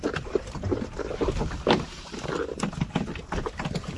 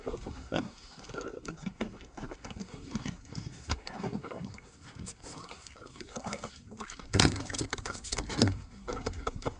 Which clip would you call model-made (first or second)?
second